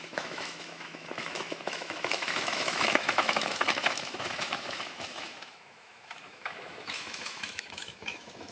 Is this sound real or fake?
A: fake